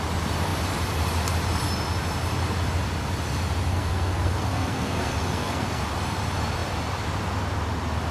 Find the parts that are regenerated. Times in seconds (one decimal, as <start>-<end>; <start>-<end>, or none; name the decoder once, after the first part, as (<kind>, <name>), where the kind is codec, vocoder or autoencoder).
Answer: 3.7-5.8 (codec, SNAC)